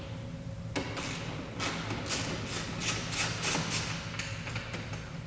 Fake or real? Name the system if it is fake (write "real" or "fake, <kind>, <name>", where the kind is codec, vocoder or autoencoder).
real